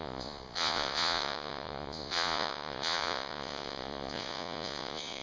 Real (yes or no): no